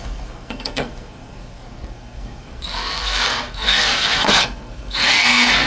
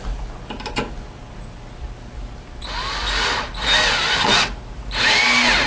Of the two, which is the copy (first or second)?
first